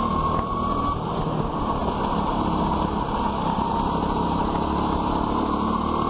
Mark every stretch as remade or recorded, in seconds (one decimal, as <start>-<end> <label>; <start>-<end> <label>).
0.0-6.1 recorded